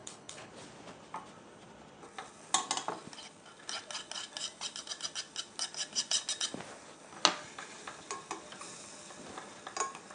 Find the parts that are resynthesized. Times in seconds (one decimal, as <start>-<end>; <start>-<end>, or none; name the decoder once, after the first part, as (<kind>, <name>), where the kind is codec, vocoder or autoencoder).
0.0-0.5 (codec, HILCodec)